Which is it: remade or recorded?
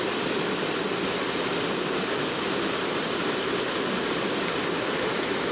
recorded